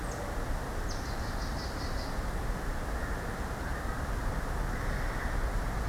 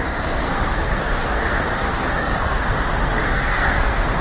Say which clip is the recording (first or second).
first